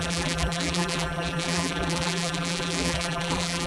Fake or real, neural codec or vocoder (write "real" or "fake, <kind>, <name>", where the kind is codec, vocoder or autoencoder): fake, vocoder, BigVGAN v2